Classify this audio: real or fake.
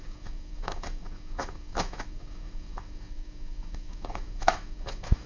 fake